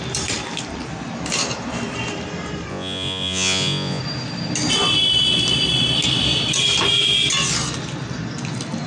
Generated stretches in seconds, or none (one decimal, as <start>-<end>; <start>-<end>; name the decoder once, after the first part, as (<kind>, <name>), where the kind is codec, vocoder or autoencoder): 2.7-4.0 (vocoder, Vocos)